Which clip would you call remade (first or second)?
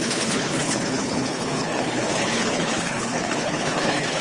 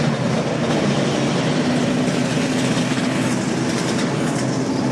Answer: first